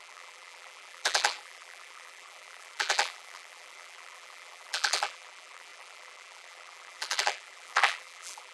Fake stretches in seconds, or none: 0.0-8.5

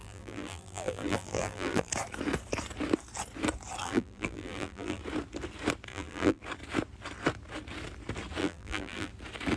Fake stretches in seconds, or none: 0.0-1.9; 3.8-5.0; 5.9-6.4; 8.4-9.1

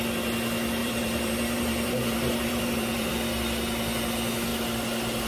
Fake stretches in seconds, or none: 0.8-3.1

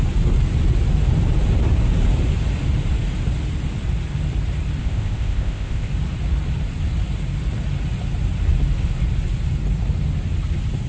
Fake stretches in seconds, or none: 4.8-5.9

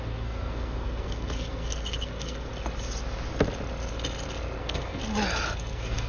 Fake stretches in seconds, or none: 0.0-2.5; 4.6-5.0; 5.6-6.1

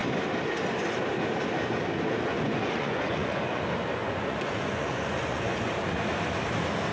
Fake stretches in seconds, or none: 2.3-3.6; 4.0-5.7